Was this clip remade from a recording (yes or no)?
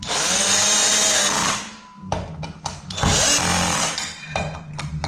no